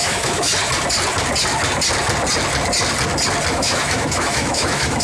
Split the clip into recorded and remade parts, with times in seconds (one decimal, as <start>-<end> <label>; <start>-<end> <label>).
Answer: 0.0-0.5 remade; 0.5-3.5 recorded; 3.5-5.0 remade